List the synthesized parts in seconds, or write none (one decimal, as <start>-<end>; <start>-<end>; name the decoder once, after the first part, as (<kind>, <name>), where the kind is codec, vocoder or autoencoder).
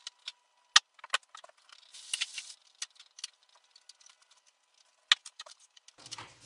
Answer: 5.2-5.8 (vocoder, BigVGAN v2)